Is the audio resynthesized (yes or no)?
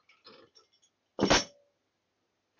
no